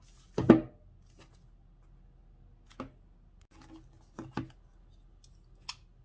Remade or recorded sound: recorded